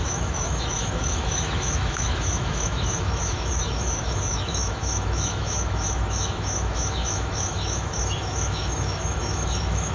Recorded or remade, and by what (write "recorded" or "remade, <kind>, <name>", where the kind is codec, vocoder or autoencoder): remade, autoencoder, DAC-VAE